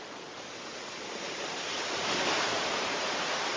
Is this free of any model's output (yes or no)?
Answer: yes